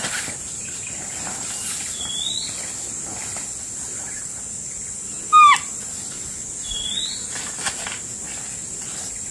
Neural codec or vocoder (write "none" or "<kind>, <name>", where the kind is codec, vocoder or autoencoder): none